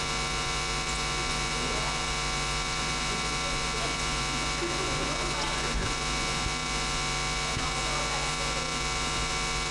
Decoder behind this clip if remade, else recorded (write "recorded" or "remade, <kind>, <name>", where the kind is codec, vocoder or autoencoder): remade, vocoder, Vocos